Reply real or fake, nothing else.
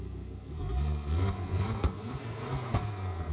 fake